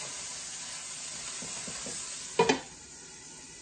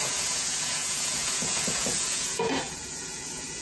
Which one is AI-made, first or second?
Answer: second